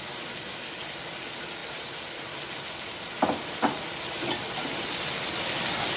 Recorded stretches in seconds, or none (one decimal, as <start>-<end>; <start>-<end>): 0.0-6.0